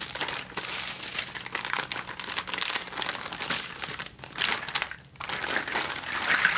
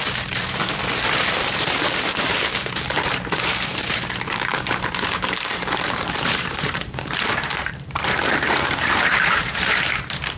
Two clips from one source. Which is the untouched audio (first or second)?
first